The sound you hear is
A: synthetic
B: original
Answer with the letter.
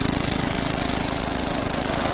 A